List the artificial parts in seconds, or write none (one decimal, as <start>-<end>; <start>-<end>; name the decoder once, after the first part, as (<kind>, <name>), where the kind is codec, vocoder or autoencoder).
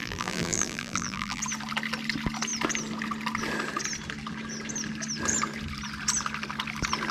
0.0-1.4 (vocoder, BigVGAN v2)